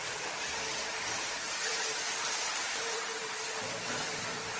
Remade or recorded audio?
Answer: remade